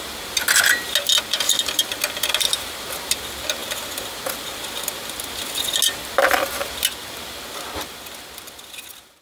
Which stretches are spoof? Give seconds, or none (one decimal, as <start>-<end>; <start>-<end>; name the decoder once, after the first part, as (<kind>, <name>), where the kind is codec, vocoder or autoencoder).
none